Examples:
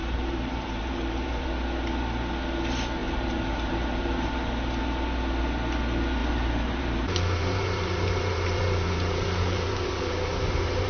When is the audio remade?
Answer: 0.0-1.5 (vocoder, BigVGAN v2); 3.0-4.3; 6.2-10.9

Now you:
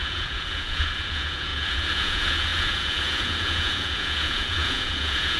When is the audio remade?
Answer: 0.0-5.4 (vocoder, Vocos)